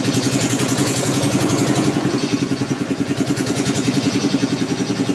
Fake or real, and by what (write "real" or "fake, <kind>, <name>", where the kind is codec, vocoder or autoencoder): fake, vocoder, Vocos